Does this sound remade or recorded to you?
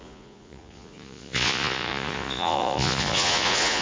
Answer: remade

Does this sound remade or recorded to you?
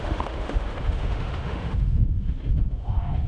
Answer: remade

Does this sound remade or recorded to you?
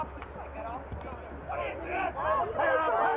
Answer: recorded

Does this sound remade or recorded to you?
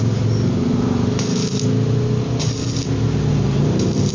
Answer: recorded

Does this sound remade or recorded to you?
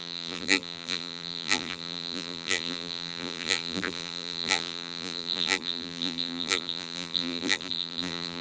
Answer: remade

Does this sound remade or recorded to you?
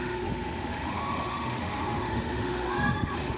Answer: remade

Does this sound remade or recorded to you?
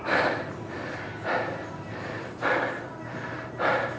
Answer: recorded